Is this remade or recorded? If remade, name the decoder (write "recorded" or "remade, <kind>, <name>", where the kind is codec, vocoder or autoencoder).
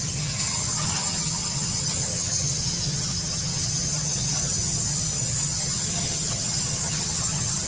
remade, vocoder, HiFi-GAN